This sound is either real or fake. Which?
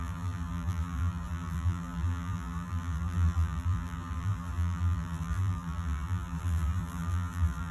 fake